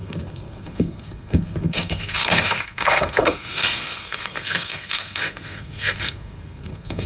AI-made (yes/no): yes